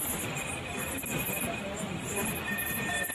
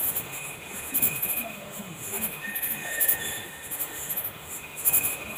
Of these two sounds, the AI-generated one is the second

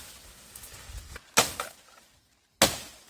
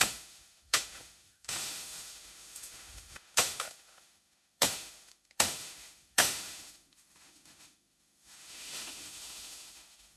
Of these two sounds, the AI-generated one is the second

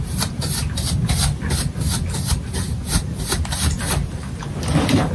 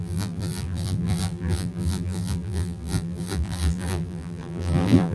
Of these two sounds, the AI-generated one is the second